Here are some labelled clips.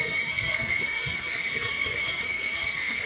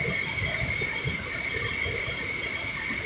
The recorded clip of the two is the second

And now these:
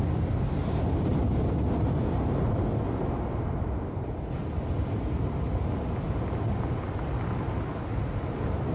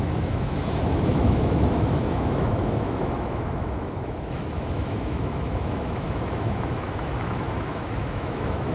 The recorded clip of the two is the first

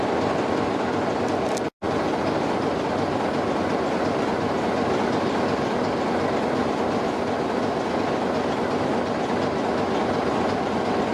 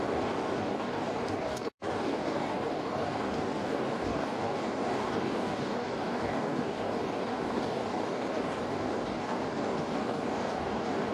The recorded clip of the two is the first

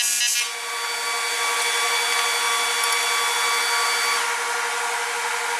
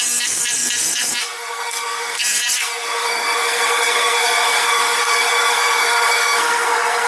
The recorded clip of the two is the first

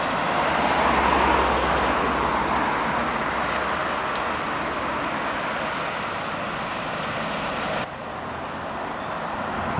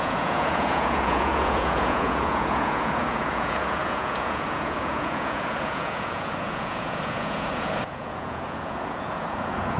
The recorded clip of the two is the first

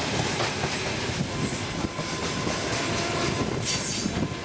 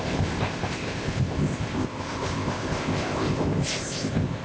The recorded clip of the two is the first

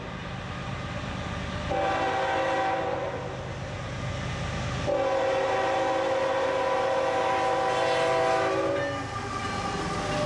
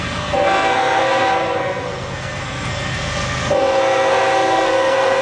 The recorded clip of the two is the first